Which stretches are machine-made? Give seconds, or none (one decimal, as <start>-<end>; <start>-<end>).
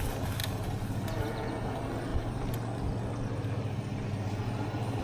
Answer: none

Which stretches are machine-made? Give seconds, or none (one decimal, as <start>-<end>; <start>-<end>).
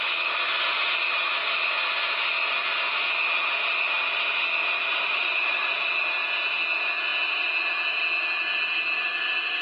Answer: 4.9-6.0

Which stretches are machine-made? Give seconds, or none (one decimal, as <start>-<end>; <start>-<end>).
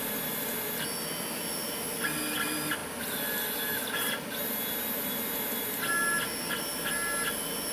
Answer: none